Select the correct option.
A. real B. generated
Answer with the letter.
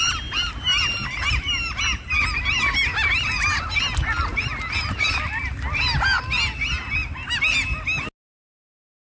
A